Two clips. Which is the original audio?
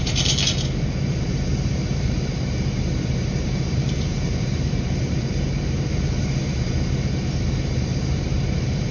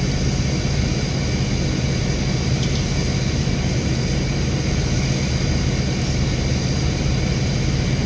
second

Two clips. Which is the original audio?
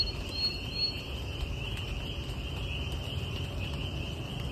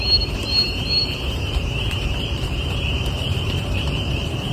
first